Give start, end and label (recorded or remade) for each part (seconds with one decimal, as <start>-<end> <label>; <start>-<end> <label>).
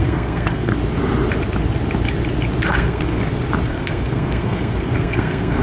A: 0.0-0.7 remade; 0.7-2.7 recorded; 2.7-3.2 remade; 3.2-3.7 recorded; 3.7-5.6 remade